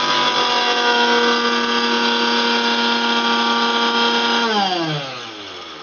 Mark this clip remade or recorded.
recorded